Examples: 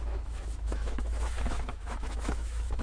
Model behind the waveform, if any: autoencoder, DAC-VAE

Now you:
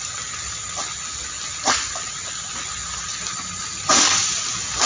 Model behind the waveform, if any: none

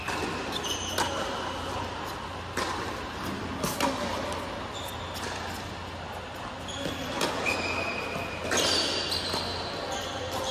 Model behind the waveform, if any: none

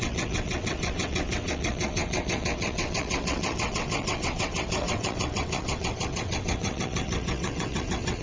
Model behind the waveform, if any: vocoder, WaveNeXt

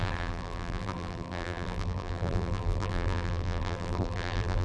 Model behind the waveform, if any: vocoder, BigVGAN v2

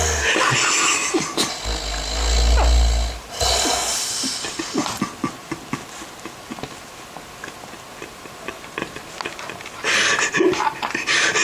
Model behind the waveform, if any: none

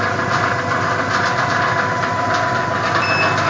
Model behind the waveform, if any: none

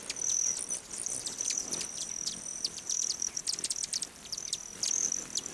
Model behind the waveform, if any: vocoder, BigVGAN v2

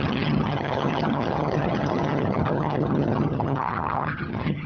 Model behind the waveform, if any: vocoder, HiFi-GAN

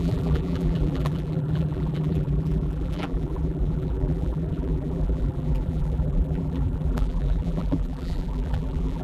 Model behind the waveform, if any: vocoder, BigVGAN v2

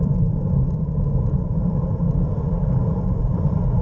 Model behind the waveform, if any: vocoder, BigVGAN v2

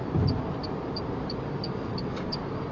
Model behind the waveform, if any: none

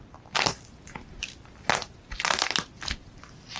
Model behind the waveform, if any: none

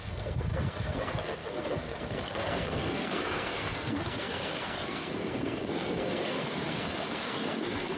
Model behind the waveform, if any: codec, SNAC